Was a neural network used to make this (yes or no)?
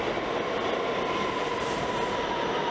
no